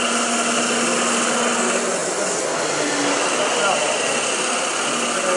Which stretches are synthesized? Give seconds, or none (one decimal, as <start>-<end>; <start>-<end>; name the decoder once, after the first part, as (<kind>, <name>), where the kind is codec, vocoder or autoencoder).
none